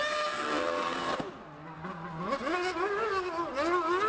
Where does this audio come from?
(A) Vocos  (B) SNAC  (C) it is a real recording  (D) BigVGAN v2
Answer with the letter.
C